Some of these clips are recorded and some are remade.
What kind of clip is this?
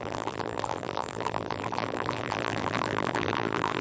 remade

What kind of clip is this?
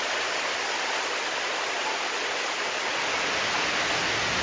recorded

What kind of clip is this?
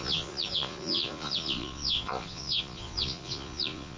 remade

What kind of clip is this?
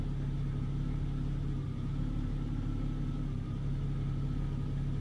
recorded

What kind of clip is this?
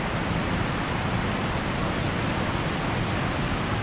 recorded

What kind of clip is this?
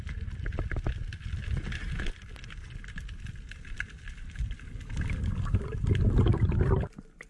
recorded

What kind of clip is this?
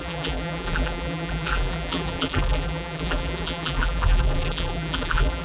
remade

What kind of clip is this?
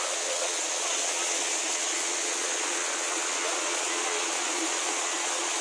remade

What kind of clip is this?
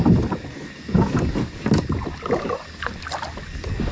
recorded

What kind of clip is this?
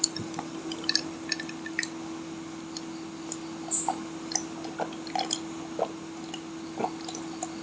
recorded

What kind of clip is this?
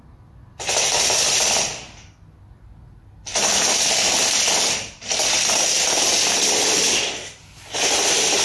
recorded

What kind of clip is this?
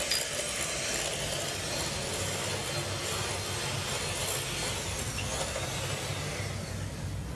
recorded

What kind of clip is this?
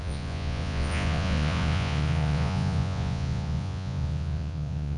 remade